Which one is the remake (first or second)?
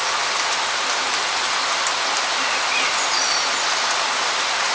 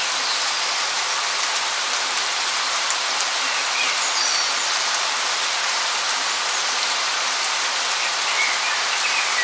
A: second